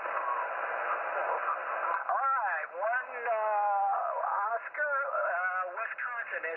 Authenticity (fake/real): real